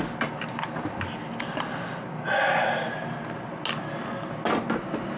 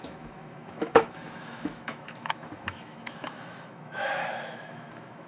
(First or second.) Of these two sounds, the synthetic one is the second